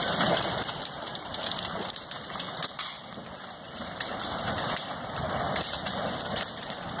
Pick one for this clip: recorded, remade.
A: remade